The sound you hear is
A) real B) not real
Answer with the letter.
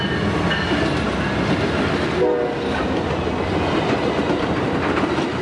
A